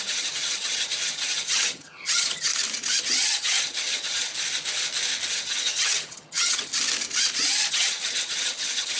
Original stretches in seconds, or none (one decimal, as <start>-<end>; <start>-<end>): 2.5-3.0; 4.3-5.3; 6.7-7.7